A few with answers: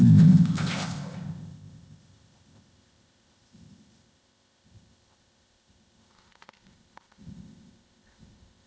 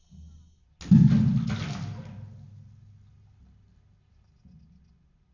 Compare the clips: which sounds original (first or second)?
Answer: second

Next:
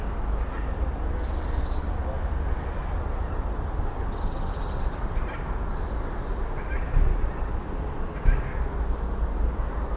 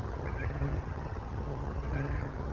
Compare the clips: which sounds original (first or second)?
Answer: first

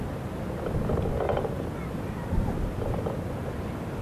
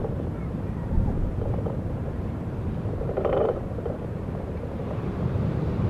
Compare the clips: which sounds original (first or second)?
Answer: first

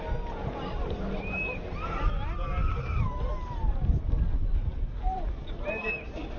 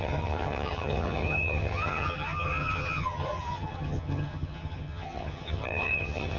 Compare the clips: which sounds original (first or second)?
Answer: first